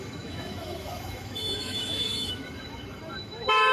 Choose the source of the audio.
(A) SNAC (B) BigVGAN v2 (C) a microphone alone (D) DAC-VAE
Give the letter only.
D